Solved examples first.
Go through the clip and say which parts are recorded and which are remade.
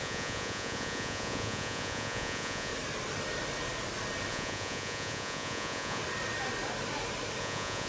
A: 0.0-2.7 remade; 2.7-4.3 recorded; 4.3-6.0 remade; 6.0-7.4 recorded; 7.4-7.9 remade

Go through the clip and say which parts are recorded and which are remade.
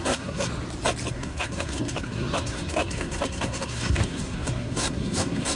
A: 0.0-0.5 remade; 0.5-1.1 recorded; 1.1-5.6 remade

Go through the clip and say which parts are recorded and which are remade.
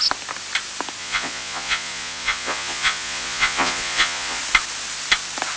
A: 0.0-1.0 recorded; 1.0-4.4 remade; 4.4-5.6 recorded